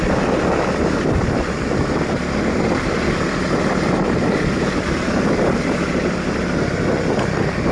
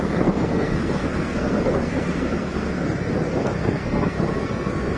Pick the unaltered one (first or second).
first